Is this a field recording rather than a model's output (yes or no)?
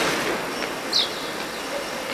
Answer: yes